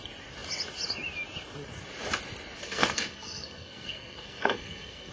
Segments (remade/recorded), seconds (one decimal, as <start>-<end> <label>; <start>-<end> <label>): 0.0-2.6 recorded; 2.6-5.1 remade